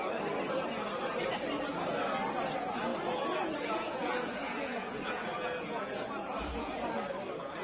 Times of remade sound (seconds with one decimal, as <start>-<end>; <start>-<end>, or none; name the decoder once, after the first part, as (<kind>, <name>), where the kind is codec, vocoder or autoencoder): 2.9-6.9 (vocoder, Vocos)